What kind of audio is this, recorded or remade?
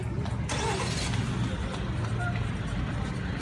recorded